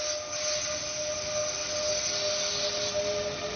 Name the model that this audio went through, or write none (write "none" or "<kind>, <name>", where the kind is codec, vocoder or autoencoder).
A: none